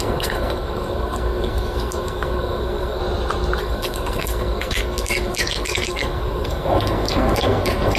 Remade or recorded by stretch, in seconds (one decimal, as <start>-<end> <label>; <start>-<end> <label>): 0.0-3.0 remade; 3.0-3.6 recorded; 3.6-8.0 remade